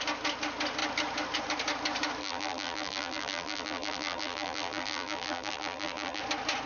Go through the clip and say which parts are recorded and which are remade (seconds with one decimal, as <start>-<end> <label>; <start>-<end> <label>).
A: 0.0-2.2 recorded; 2.2-6.2 remade; 6.2-6.7 recorded